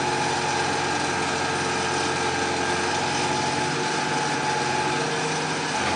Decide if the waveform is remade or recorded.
recorded